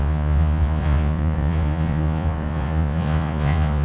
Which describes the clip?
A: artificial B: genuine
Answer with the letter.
A